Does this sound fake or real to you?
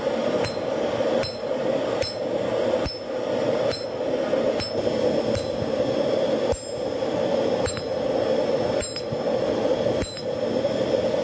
real